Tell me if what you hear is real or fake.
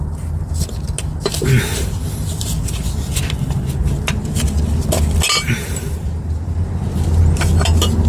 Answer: real